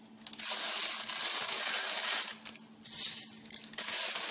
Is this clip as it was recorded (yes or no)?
yes